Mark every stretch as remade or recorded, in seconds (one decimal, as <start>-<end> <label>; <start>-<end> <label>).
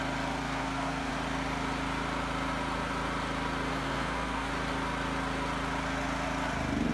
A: 0.0-0.4 recorded; 0.4-1.1 remade; 1.1-3.7 recorded; 3.7-4.5 remade; 4.5-6.9 recorded